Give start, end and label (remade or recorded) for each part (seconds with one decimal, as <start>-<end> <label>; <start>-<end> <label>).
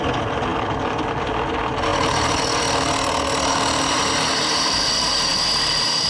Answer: 0.0-6.1 recorded